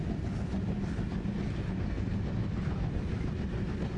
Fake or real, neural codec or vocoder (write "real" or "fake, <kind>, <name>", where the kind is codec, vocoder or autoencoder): real